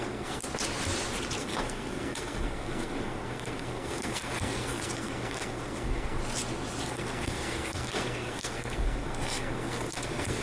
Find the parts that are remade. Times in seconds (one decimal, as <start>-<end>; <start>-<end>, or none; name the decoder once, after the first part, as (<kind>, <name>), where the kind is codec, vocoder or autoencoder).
0.0-0.4 (codec, SNAC); 1.4-6.2; 6.9-10.4